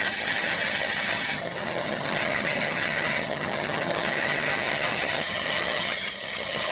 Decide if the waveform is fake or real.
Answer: fake